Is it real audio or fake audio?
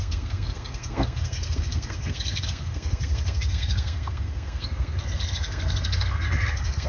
fake